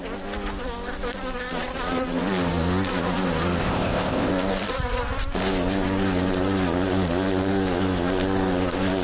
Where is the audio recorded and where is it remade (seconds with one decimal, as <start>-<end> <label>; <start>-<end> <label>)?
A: 0.0-3.6 recorded; 3.6-4.3 remade; 4.3-9.0 recorded